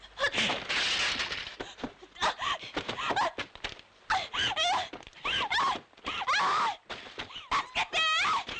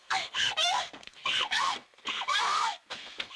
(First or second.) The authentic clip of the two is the first